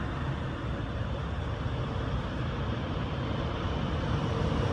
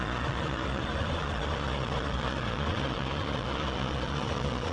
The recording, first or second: first